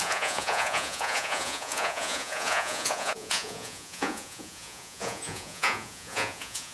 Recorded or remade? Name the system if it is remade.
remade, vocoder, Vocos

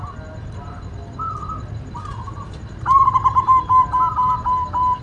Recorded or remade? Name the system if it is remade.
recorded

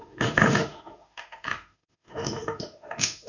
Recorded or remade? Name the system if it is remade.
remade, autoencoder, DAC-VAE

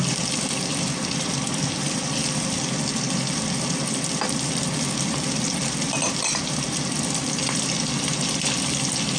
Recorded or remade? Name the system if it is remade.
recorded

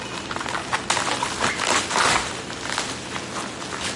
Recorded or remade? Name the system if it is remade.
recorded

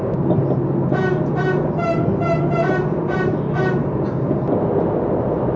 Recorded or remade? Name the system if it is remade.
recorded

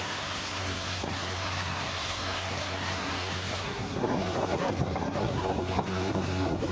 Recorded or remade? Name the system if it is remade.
remade, codec, SNAC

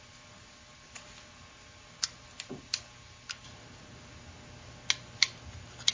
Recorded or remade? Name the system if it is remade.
recorded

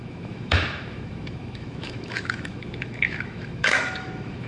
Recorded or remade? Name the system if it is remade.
remade, autoencoder, DAC-VAE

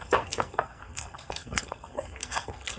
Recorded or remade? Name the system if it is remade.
remade, codec, SNAC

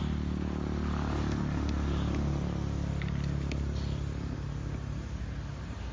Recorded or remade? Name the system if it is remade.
recorded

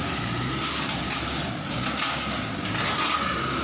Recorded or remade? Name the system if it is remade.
recorded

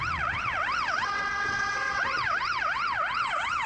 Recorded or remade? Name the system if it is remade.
remade, vocoder, WaveNeXt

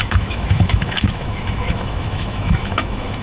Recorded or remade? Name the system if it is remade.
remade, autoencoder, DAC-VAE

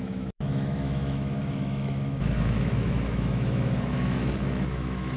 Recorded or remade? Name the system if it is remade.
remade, autoencoder, DAC-VAE